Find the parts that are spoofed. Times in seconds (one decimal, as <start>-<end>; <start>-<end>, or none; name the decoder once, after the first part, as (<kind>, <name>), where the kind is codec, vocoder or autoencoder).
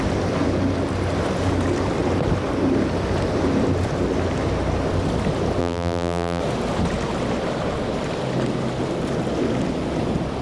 5.6-6.4 (vocoder, BigVGAN v2)